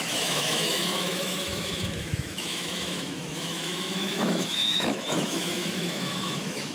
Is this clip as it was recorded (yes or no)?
no